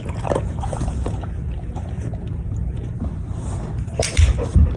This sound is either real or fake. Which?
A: fake